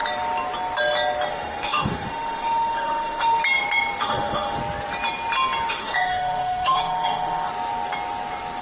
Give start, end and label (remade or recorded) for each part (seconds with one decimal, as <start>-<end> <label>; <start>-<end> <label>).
0.0-1.3 recorded; 1.3-3.4 remade; 3.4-4.0 recorded; 4.0-4.6 remade; 4.6-5.7 recorded; 5.7-7.5 remade; 7.5-8.6 recorded